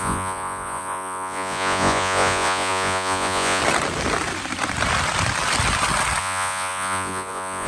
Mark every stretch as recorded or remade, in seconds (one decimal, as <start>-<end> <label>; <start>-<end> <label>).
0.0-3.6 remade; 3.6-6.2 recorded; 6.2-7.7 remade